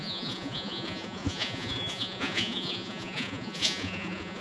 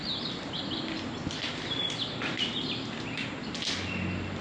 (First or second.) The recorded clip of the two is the second